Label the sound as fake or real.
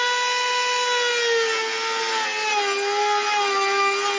real